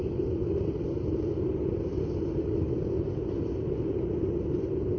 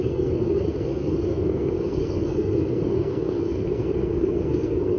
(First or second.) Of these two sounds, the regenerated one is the second